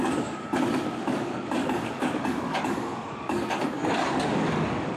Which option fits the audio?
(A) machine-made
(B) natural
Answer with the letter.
A